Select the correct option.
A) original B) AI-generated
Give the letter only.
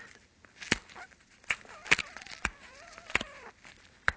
B